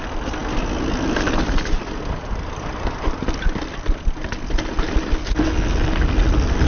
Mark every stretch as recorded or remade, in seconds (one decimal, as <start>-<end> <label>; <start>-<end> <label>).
0.0-6.7 recorded